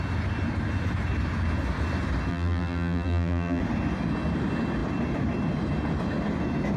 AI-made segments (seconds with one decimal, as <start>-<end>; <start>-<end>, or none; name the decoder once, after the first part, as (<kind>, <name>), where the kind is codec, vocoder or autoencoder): 2.3-3.6 (vocoder, BigVGAN v2)